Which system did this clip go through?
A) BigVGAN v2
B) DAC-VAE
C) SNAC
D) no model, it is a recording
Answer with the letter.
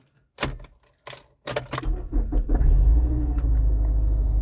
D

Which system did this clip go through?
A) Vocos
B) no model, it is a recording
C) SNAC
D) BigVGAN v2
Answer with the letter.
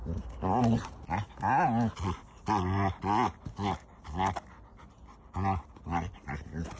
B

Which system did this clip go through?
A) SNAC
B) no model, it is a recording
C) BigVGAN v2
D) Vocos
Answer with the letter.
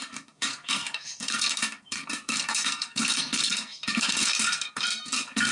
A